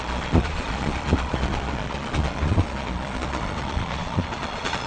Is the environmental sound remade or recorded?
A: remade